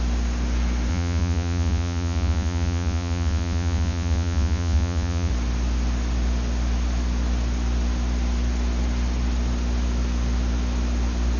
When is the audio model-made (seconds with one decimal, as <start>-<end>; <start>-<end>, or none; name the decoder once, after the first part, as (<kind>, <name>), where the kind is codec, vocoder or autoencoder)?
0.9-5.3 (vocoder, Vocos)